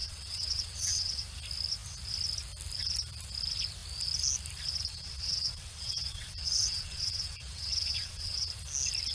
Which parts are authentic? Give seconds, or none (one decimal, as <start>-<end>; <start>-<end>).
1.2-4.9; 8.5-9.1